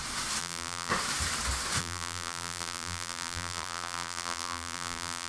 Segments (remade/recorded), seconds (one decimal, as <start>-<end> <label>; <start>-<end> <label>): 0.0-0.4 recorded; 0.4-0.9 remade; 0.9-1.8 recorded; 1.8-5.3 remade